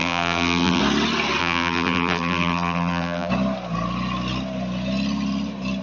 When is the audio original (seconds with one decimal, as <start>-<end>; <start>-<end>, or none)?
0.8-1.4; 3.3-5.8